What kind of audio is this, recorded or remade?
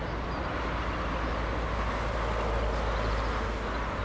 recorded